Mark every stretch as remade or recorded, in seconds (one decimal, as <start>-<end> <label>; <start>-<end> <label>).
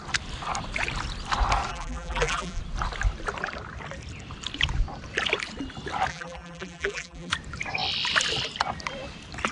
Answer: 0.0-1.7 recorded; 1.7-2.6 remade; 2.6-6.1 recorded; 6.1-7.3 remade; 7.3-9.5 recorded